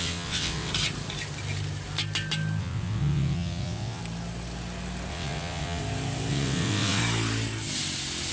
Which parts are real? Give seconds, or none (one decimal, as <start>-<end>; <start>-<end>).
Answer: 0.7-2.6; 4.0-5.1; 5.8-6.3; 7.0-8.3